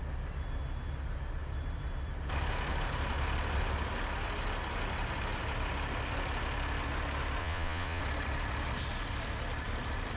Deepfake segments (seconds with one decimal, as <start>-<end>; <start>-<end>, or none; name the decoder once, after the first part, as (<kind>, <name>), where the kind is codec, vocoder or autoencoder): 7.4-8.0 (vocoder, Vocos)